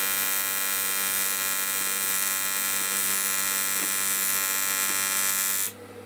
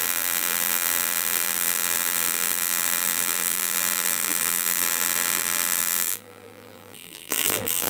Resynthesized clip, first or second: second